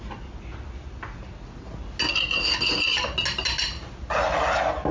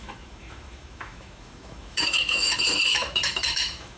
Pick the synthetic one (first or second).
second